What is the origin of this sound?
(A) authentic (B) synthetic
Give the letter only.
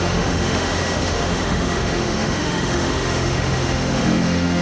B